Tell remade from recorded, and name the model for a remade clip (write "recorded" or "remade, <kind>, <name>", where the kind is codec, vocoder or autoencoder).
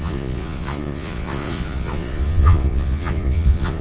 remade, vocoder, Vocos